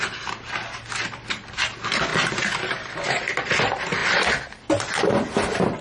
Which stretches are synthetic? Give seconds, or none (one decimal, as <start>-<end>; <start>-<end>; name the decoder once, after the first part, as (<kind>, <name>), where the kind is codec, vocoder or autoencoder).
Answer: none